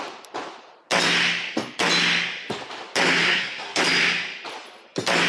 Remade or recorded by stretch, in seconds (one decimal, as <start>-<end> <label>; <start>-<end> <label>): 0.0-3.2 recorded; 3.2-3.8 remade; 3.8-5.3 recorded